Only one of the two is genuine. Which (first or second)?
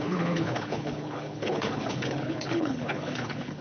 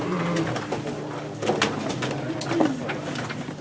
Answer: second